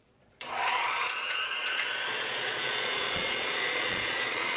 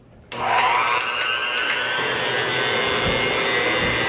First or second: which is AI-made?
first